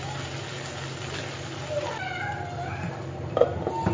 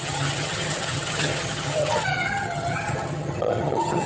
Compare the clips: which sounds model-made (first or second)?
second